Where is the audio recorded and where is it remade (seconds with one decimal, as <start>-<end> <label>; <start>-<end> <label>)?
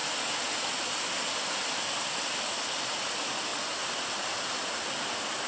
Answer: 0.0-5.5 recorded